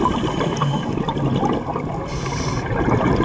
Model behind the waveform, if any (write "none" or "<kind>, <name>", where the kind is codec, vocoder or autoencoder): none